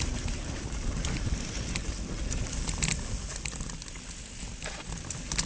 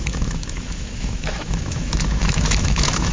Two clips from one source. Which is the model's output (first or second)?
second